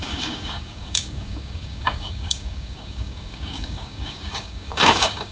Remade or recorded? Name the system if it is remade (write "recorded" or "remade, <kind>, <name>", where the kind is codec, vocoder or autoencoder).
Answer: remade, codec, DAC